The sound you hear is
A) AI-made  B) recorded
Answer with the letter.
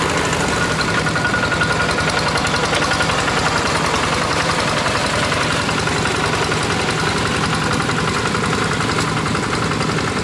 B